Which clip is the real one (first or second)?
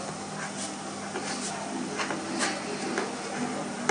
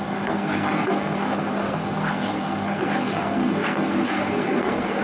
first